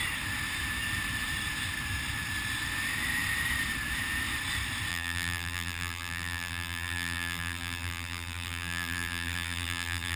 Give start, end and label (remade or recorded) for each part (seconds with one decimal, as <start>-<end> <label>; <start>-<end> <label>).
0.0-4.9 recorded; 4.9-10.2 remade